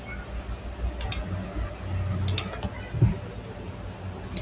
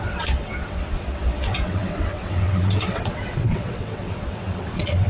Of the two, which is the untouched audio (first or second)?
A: first